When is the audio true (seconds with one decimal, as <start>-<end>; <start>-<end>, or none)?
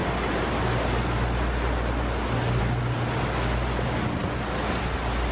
0.0-5.3